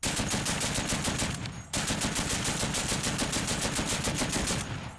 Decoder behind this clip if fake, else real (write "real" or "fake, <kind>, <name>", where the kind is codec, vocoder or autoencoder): real